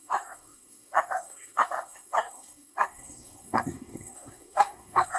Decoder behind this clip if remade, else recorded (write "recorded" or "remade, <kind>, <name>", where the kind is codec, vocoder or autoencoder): remade, codec, SNAC